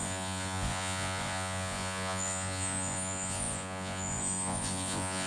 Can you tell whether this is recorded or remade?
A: remade